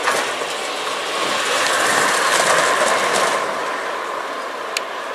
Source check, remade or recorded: recorded